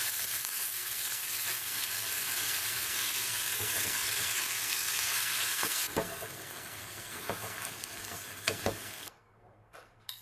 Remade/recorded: remade